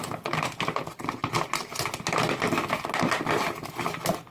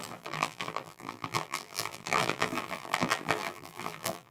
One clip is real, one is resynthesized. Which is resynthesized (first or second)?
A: second